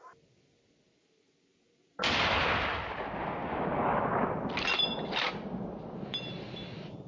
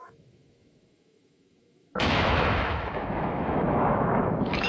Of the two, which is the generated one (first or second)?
second